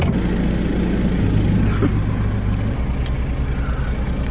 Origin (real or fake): real